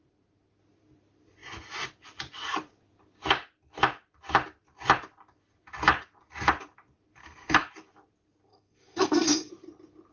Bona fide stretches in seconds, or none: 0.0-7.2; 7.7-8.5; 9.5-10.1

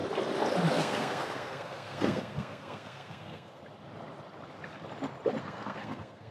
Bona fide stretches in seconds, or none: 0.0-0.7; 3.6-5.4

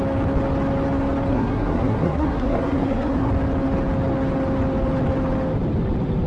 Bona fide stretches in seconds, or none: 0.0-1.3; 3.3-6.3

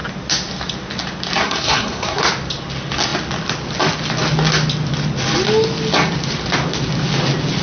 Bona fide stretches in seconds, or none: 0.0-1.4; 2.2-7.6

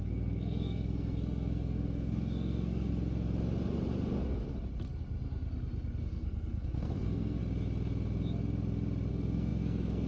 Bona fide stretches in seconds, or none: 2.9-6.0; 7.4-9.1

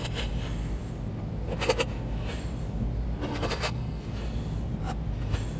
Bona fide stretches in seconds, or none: 0.0-3.3; 4.1-5.6

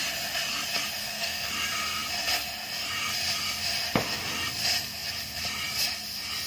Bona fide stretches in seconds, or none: 0.0-1.0; 1.5-6.5

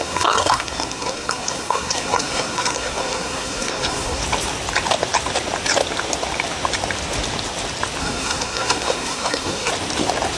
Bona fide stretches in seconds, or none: 4.2-8.0; 9.7-10.4